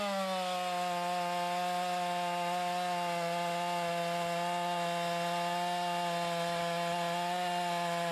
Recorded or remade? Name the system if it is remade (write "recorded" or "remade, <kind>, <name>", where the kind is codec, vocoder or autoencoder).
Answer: recorded